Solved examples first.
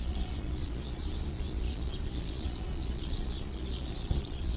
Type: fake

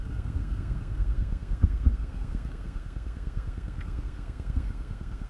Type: fake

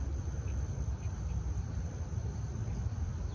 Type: real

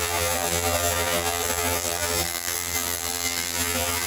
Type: fake